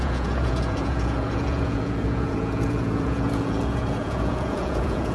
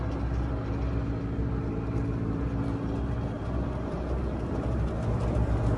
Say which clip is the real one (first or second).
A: second